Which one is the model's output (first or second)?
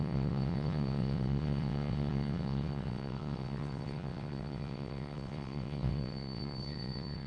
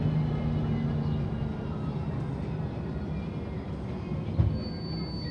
first